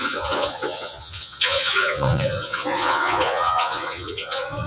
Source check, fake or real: fake